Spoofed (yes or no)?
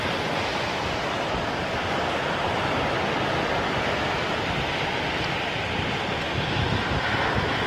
no